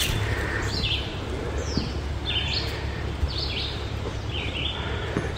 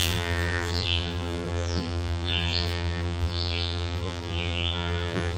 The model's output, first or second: second